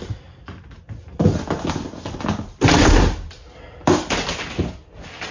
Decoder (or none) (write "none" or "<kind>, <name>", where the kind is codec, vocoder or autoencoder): none